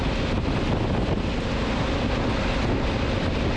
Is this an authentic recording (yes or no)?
yes